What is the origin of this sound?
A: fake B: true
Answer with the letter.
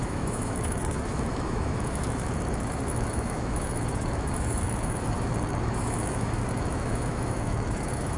A